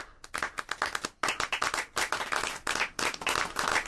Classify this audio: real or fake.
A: real